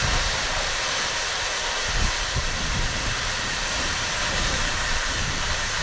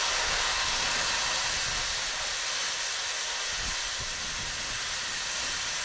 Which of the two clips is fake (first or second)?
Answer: first